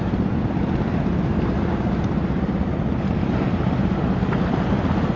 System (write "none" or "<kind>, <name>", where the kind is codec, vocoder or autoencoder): none